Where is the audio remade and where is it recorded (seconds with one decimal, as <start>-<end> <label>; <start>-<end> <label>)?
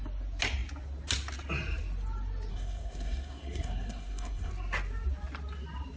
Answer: 0.0-2.5 recorded; 2.5-4.5 remade; 4.5-6.0 recorded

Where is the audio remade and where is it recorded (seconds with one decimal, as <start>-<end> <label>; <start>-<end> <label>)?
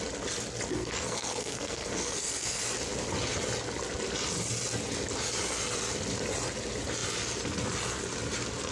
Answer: 0.0-0.7 recorded; 0.7-2.6 remade; 2.6-8.7 recorded